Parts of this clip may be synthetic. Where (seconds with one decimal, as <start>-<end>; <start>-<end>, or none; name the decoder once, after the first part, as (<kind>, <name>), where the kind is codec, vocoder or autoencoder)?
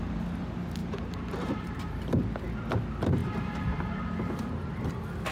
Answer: 0.8-2.0 (vocoder, BigVGAN v2); 3.2-4.0